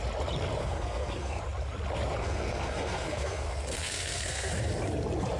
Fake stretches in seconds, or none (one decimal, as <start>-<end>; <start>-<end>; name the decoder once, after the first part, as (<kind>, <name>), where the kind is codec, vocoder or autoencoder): 0.6-1.4 (codec, SNAC); 2.2-4.5